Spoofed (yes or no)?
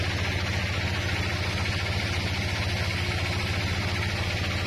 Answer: no